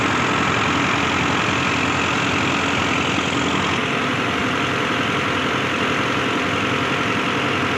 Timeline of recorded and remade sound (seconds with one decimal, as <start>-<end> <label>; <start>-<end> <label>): 0.0-3.8 recorded; 3.8-4.4 remade; 4.4-7.8 recorded